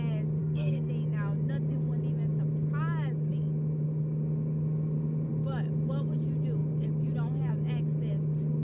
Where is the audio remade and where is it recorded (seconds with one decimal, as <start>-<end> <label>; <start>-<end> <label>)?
0.0-0.4 recorded; 0.4-0.9 remade; 0.9-8.6 recorded